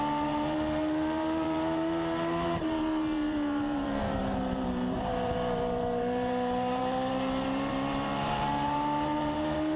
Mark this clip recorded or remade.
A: remade